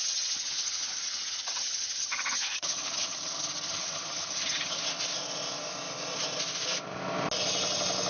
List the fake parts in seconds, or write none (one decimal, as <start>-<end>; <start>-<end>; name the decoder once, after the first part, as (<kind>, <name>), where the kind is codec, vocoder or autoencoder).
0.0-4.8 (vocoder, HiFi-GAN)